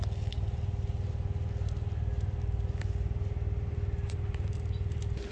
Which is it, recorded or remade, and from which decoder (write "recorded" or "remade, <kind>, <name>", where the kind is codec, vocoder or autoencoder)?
recorded